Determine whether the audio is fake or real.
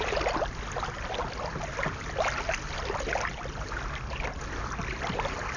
real